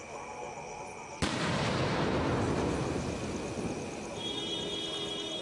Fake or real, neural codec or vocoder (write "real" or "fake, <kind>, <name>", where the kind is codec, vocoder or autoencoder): real